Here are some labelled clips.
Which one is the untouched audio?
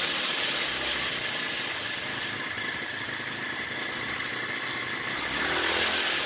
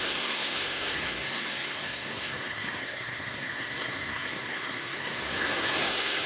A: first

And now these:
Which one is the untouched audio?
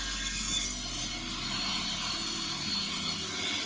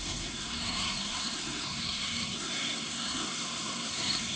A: first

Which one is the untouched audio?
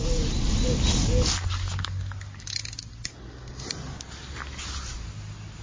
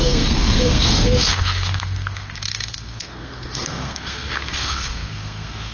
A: first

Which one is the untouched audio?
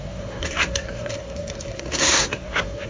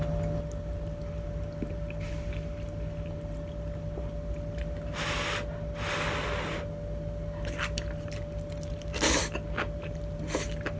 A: second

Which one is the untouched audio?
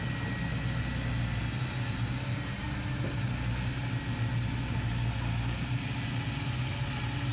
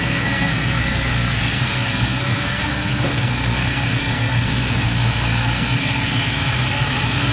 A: first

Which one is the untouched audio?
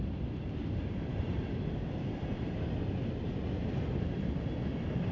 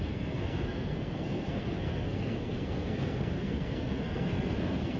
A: first